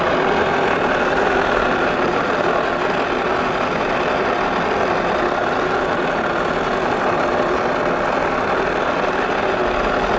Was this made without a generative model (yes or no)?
yes